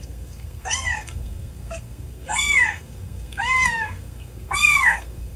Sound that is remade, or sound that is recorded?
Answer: remade